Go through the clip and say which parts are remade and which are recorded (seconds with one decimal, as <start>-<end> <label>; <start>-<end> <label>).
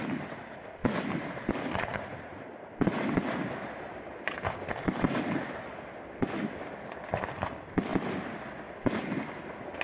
0.0-9.8 recorded